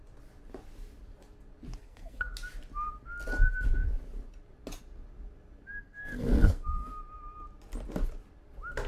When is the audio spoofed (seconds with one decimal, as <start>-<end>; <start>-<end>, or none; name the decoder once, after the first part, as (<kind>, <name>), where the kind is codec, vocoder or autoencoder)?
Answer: 1.8-2.3 (codec, SNAC); 5.7-6.9